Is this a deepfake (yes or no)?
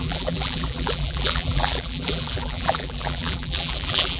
yes